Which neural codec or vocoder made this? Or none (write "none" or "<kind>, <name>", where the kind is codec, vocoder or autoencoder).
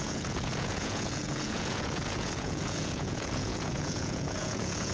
vocoder, Vocos